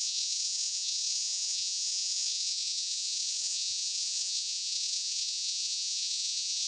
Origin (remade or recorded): remade